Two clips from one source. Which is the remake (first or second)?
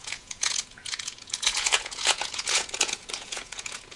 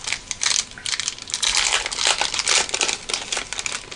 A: first